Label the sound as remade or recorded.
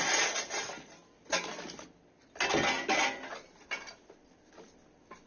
recorded